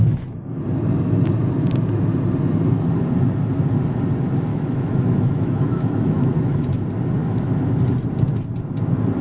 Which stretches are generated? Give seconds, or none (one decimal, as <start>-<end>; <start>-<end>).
4.5-6.8; 7.2-7.8